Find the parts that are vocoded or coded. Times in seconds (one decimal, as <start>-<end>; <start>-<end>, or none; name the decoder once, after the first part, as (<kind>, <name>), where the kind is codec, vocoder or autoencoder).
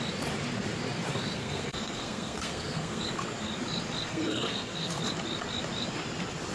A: 1.4-3.0 (codec, SNAC); 4.1-5.0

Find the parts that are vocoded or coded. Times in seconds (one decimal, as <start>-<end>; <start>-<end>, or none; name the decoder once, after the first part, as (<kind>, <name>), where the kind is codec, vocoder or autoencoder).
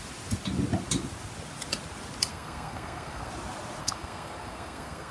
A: 2.3-3.3 (codec, SNAC); 3.8-5.1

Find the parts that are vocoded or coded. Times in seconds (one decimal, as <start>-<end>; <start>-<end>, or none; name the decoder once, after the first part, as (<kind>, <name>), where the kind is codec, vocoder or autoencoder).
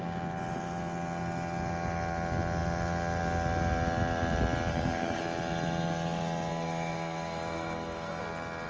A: 4.7-5.2 (codec, SNAC); 6.5-8.2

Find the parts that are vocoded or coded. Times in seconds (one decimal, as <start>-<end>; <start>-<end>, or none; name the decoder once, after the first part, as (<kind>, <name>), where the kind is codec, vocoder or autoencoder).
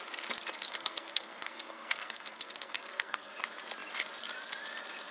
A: 0.7-3.4 (codec, SNAC)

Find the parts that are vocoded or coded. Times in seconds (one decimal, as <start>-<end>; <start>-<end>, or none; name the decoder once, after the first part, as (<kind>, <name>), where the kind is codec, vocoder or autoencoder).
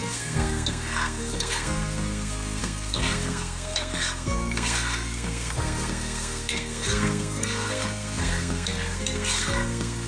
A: 0.0-10.1 (codec, SNAC)